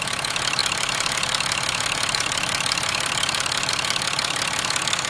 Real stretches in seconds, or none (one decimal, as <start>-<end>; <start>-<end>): none